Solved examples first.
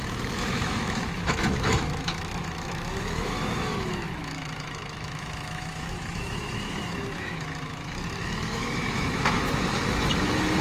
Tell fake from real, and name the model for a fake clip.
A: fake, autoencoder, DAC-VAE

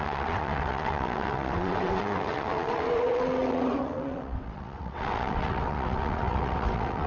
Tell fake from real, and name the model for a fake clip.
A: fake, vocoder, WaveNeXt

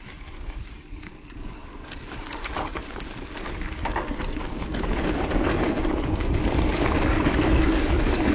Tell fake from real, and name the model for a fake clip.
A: fake, codec, DAC